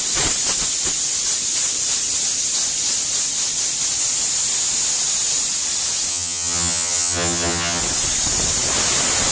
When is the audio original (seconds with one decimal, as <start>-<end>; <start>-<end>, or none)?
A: 0.0-6.1; 7.8-9.3